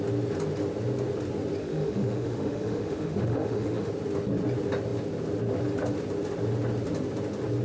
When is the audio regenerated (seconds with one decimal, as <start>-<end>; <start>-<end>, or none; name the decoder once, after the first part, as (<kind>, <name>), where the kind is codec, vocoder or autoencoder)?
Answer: 1.6-3.9 (autoencoder, DAC-VAE)